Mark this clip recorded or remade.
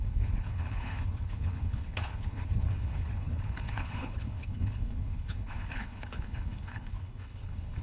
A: remade